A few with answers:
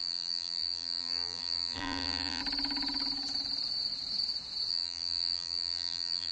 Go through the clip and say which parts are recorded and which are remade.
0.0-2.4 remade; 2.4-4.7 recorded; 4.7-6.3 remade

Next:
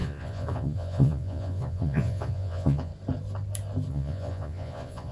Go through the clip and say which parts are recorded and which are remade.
0.0-2.9 remade; 2.9-3.9 recorded; 3.9-5.1 remade

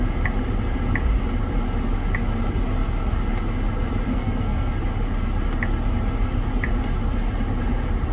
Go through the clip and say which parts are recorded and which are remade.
0.0-4.1 recorded; 4.1-4.7 remade; 4.7-8.1 recorded